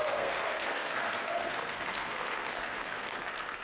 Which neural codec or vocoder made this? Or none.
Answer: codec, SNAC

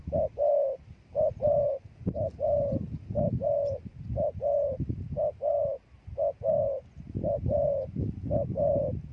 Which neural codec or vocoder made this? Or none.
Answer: none